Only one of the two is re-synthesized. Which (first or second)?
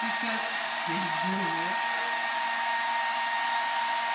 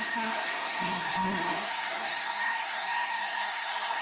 second